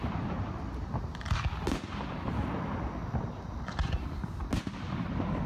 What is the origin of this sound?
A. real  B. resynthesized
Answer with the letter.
A